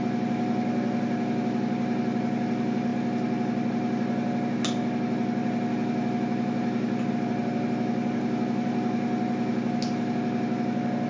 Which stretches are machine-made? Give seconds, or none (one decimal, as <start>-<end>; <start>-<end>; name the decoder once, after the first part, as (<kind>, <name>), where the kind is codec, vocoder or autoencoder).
none